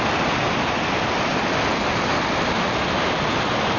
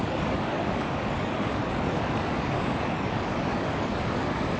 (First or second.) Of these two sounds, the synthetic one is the second